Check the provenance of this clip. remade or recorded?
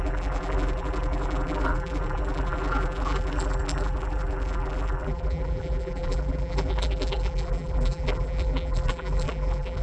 remade